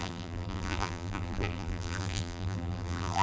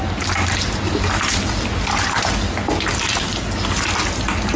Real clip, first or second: second